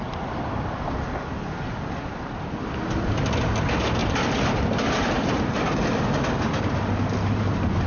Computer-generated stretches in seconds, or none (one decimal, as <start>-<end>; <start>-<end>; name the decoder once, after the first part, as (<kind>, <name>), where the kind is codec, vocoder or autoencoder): 4.0-5.2 (vocoder, BigVGAN v2)